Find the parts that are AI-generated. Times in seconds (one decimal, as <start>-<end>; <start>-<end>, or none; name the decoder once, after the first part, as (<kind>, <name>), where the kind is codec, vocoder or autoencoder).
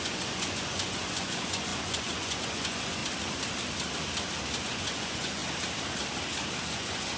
0.0-3.0 (vocoder, Vocos); 4.6-5.4; 6.6-7.2